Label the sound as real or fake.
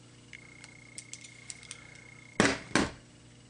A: real